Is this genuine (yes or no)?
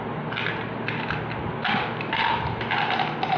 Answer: yes